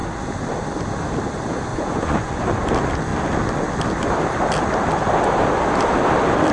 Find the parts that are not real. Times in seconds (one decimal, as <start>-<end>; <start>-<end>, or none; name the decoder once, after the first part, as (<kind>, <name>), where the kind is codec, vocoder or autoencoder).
1.7-2.7 (vocoder, Vocos)